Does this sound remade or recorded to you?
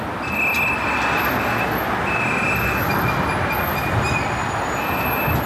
recorded